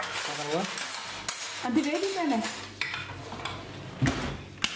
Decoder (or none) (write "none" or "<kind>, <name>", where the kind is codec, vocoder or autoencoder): none